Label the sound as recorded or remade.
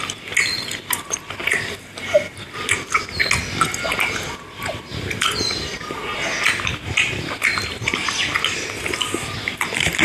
recorded